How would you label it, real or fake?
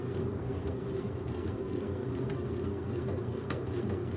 fake